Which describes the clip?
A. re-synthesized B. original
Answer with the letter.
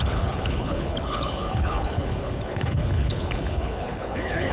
A